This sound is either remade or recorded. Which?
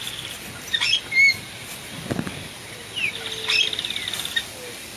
recorded